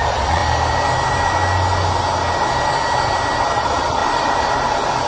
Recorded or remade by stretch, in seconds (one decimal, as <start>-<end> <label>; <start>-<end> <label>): 0.0-0.4 remade; 0.4-3.5 recorded; 3.5-4.0 remade; 4.0-5.1 recorded